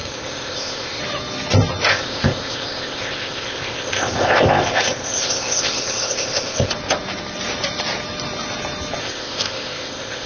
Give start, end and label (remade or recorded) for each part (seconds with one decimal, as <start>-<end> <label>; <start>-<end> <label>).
0.0-1.0 remade; 1.0-1.9 recorded; 1.9-6.7 remade; 6.7-9.0 recorded; 9.0-10.3 remade